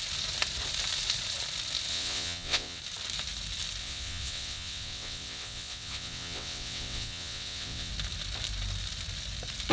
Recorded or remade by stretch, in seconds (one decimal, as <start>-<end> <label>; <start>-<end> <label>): 0.0-1.9 recorded; 1.9-2.8 remade; 2.8-3.8 recorded; 3.8-7.9 remade; 7.9-9.7 recorded